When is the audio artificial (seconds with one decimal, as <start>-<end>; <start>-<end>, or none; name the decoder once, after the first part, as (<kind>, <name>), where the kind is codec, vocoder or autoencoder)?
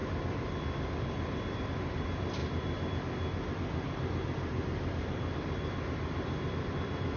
none